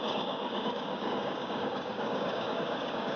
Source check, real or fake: fake